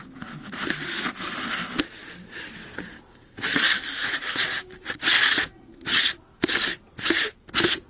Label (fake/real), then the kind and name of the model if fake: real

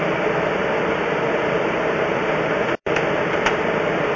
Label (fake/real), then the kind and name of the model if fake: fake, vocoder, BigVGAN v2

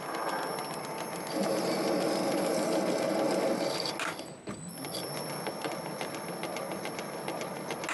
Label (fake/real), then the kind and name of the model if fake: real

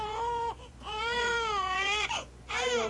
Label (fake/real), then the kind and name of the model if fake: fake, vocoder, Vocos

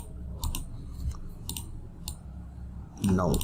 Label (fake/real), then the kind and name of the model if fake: real